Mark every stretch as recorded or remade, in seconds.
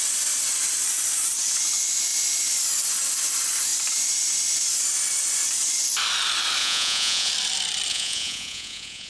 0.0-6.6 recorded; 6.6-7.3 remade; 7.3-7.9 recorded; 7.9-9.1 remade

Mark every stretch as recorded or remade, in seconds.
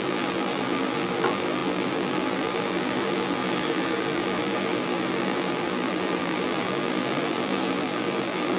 0.0-8.6 remade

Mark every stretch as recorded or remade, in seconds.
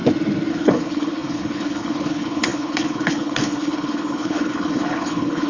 0.0-0.5 recorded; 0.5-5.5 remade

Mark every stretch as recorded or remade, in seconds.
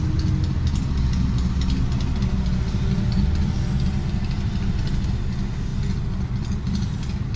0.0-7.4 recorded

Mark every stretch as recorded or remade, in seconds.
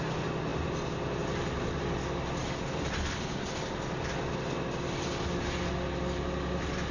0.0-6.9 recorded